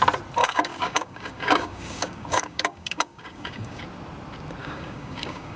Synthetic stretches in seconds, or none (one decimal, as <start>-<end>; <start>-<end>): 0.4-3.8; 4.6-5.6